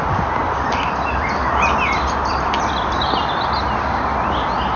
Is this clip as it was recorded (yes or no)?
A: yes